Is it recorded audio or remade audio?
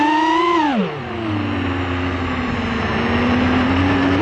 recorded